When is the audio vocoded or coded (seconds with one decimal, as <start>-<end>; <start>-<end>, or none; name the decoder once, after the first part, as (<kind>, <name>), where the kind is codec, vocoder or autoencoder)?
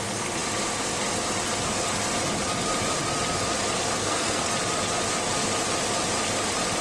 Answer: 4.0-4.5 (codec, SNAC)